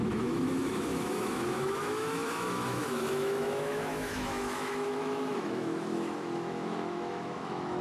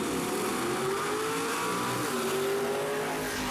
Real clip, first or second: second